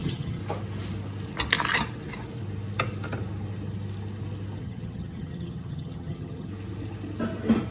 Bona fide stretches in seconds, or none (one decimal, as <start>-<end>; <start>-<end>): 0.4-4.6; 6.5-7.7